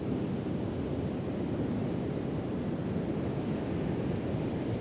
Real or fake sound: real